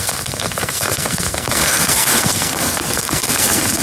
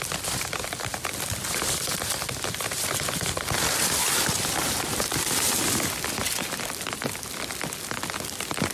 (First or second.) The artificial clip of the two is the first